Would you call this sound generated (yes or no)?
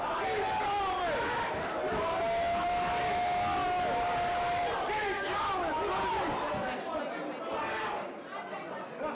no